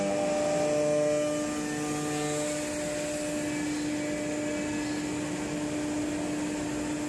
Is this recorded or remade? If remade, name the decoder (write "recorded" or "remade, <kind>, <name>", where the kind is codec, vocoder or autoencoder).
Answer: recorded